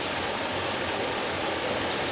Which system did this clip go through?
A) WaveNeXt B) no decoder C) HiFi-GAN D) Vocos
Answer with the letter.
B